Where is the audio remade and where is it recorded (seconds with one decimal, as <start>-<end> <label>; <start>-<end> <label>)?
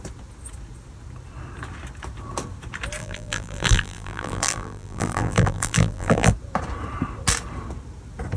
0.0-3.0 recorded; 3.0-6.3 remade; 6.3-8.4 recorded